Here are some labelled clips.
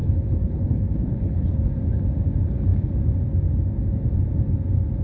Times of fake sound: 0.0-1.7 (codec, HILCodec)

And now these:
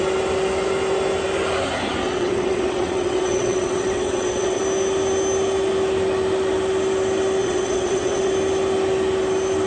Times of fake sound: 2.0-4.6 (vocoder, WaveNeXt); 7.4-8.3

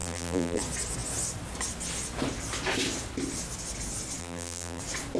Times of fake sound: 0.0-0.6 (vocoder, BigVGAN v2); 4.2-4.8

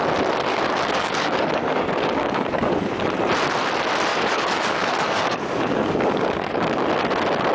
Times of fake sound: 0.5-3.1 (codec, DAC); 4.1-6.9

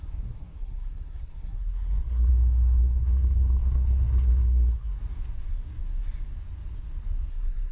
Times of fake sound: 0.0-2.3 (codec, SNAC); 2.8-5.0; 7.3-7.7

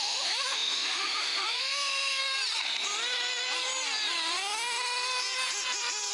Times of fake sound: 0.0-2.2 (autoencoder, DAC-VAE)